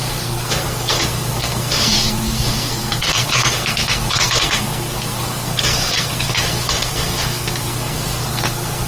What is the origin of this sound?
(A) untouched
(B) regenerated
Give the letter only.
B